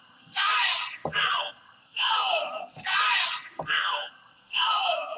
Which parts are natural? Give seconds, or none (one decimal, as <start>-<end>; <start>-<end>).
0.5-1.4; 2.9-3.6